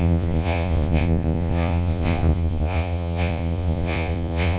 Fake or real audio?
fake